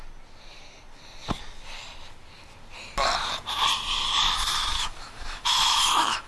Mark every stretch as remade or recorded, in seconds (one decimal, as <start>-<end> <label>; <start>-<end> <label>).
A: 0.0-4.7 recorded; 4.7-6.3 remade